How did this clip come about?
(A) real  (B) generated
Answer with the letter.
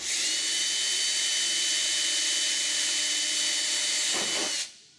A